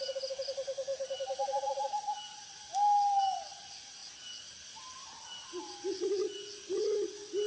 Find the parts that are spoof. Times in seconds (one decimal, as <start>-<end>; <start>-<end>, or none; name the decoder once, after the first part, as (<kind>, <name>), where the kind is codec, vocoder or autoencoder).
none